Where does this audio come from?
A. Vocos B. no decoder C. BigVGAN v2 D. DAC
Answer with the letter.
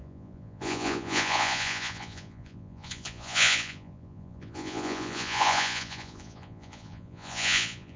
A